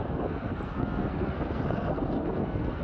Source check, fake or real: fake